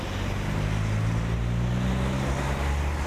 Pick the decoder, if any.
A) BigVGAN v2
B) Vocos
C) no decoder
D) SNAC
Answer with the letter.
C